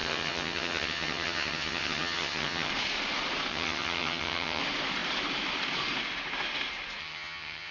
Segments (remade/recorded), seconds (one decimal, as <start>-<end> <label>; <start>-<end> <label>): 0.0-2.7 remade; 2.7-3.5 recorded; 3.5-4.6 remade; 4.6-7.0 recorded; 7.0-7.7 remade

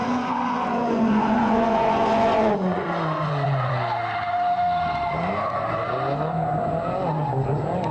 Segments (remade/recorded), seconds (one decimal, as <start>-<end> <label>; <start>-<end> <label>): 0.0-3.7 remade; 3.7-7.9 recorded

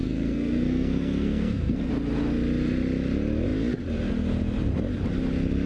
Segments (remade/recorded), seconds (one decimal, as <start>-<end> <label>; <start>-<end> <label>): 0.0-1.9 remade; 1.9-5.7 recorded

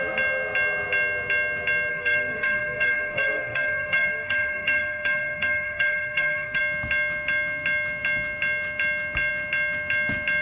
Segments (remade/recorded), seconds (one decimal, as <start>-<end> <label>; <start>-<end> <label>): 0.0-1.9 recorded; 1.9-6.6 remade; 6.6-10.4 recorded

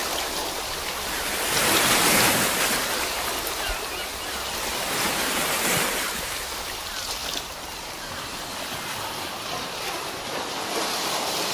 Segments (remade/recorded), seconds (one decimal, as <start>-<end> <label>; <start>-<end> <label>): 0.0-11.5 recorded

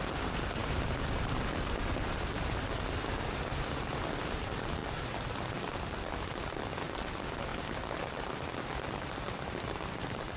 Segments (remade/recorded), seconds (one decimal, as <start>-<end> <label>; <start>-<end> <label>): 0.0-4.8 remade; 4.8-5.5 recorded; 5.5-7.5 remade; 7.5-8.5 recorded; 8.5-10.4 remade

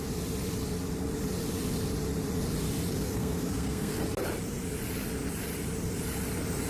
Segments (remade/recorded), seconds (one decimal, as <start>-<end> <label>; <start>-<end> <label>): 0.0-2.9 recorded; 2.9-4.0 remade; 4.0-6.7 recorded

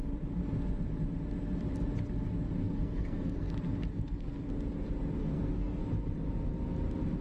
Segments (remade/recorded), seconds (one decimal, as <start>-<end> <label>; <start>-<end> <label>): 0.0-2.6 recorded; 2.6-3.5 remade; 3.5-3.9 recorded; 3.9-4.5 remade; 4.5-5.2 recorded; 5.2-5.8 remade; 5.8-7.2 recorded